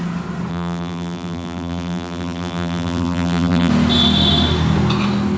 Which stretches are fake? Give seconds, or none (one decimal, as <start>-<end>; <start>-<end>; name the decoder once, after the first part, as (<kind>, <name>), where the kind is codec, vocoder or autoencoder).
0.5-3.7 (vocoder, BigVGAN v2)

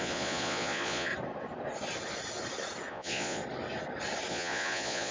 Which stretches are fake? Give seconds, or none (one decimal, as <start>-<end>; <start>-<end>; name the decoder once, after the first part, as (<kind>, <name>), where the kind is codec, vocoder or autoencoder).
0.0-1.1 (vocoder, Vocos); 2.9-3.4; 4.3-5.1

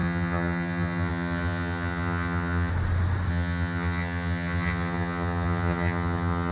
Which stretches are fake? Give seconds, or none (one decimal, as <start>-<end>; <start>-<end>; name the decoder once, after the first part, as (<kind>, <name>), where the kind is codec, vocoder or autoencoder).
0.0-2.7 (vocoder, HiFi-GAN); 3.3-6.5

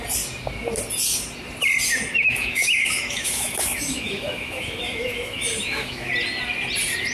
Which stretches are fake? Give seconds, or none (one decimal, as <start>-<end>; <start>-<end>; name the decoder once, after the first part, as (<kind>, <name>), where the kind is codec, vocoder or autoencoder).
2.2-6.1 (autoencoder, DAC-VAE)

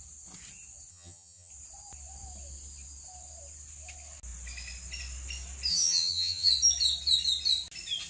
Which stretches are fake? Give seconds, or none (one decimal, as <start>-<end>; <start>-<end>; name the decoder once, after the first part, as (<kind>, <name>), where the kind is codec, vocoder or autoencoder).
0.9-1.5 (vocoder, HiFi-GAN); 5.7-6.5

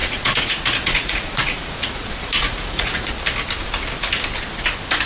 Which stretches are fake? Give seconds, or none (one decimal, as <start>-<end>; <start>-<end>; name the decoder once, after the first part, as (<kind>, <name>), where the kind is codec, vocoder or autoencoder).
0.0-3.1 (vocoder, Vocos)